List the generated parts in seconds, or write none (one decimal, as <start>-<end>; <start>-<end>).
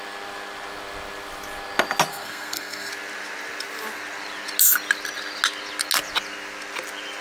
2.1-2.9